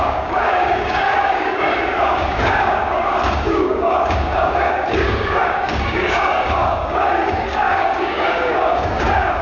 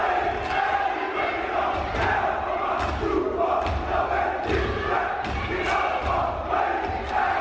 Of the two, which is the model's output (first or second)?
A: first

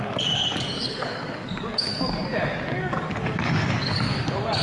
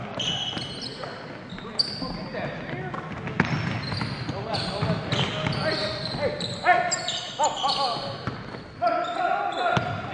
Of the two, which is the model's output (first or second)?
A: first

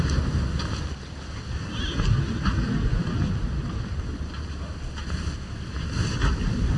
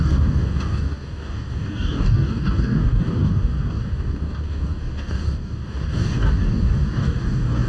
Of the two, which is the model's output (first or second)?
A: second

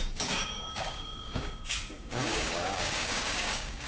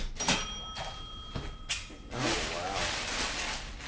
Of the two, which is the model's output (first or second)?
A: first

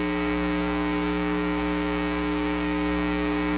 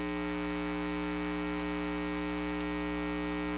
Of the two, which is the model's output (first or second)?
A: first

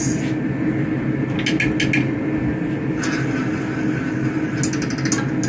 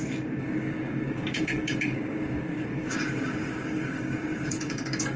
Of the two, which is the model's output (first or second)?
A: second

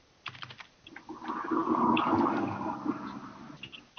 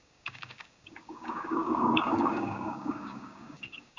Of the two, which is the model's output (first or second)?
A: second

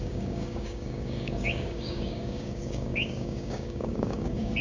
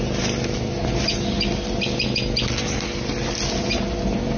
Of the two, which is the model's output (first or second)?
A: first